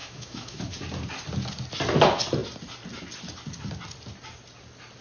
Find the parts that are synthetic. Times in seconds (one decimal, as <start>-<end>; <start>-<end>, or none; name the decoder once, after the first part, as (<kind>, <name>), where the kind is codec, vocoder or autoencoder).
0.0-0.6 (autoencoder, DAC-VAE)